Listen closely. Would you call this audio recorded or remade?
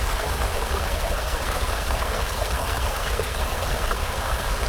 remade